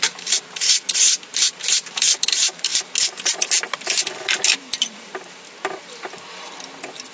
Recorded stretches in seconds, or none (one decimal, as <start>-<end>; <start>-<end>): 2.7-7.1